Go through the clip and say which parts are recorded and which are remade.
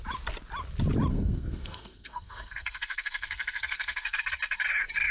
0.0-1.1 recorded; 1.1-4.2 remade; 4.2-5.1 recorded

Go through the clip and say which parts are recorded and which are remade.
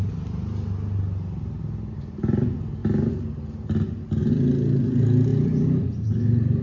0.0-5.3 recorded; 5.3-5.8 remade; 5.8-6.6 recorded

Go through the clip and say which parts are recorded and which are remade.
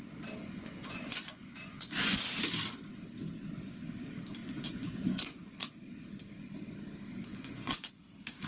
0.0-0.4 recorded; 0.4-2.2 remade; 2.2-4.4 recorded; 4.4-5.7 remade; 5.7-7.3 recorded; 7.3-7.9 remade; 7.9-8.5 recorded